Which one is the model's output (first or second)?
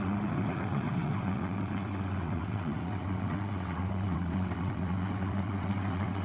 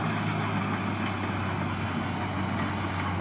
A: first